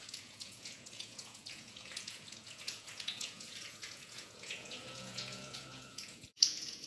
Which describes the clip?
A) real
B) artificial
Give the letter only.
B